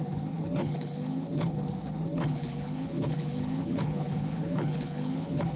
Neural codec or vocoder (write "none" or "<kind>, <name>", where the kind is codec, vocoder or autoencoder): codec, HILCodec